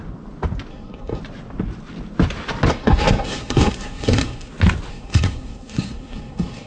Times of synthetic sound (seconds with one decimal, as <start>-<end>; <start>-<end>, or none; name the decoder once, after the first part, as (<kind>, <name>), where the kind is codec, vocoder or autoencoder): 0.7-1.2 (codec, SNAC); 2.7-4.5; 4.9-6.7